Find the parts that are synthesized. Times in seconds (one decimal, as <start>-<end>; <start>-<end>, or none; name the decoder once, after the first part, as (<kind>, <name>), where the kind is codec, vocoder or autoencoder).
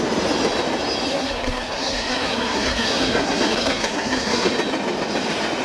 1.1-4.5 (codec, SNAC)